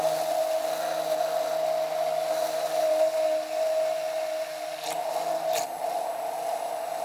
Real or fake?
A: real